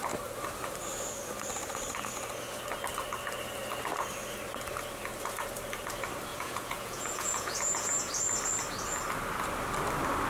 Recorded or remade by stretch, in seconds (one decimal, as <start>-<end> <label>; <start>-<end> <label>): 0.0-6.3 recorded; 6.3-8.1 remade; 8.1-10.3 recorded